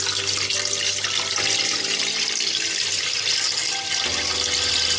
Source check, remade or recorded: recorded